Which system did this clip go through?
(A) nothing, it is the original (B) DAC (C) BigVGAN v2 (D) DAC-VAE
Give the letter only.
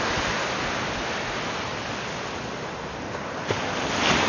A